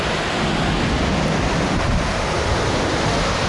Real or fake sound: real